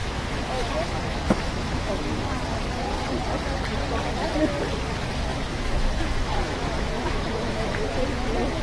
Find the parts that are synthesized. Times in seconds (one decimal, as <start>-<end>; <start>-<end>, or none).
0.0-2.3; 5.3-7.8